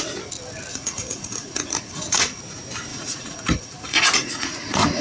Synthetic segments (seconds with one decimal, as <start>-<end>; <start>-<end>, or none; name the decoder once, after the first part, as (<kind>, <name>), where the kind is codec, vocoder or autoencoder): 0.7-2.4 (vocoder, Vocos); 2.9-5.0